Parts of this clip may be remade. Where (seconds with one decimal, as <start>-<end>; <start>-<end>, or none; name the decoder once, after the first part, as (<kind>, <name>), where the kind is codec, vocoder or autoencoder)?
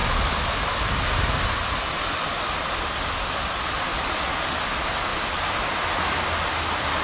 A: 0.0-1.8 (vocoder, BigVGAN v2); 3.9-4.5